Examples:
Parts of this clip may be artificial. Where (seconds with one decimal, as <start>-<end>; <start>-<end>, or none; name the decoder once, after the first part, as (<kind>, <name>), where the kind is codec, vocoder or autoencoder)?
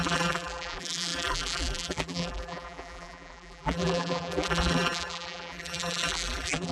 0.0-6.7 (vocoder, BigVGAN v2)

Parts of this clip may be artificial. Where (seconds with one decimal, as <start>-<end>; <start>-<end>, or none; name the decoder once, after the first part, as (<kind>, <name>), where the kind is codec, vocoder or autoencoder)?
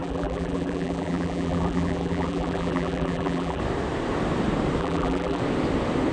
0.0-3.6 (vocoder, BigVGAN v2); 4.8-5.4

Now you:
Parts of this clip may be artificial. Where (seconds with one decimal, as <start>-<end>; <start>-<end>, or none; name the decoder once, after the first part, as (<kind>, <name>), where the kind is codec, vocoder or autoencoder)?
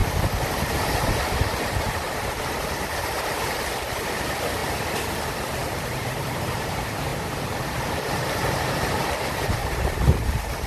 0.6-4.6 (vocoder, BigVGAN v2); 5.5-10.7